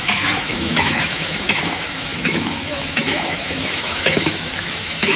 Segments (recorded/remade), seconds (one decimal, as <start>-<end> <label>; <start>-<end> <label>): 0.0-5.2 remade